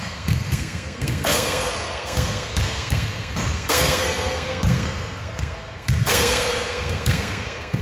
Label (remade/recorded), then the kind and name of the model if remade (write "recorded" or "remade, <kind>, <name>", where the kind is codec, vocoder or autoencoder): remade, codec, SNAC